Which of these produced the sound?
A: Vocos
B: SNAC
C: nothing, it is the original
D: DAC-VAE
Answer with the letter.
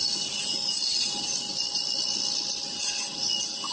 C